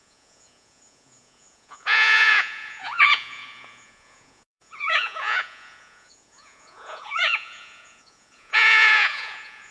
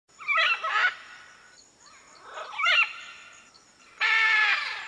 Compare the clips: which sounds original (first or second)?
second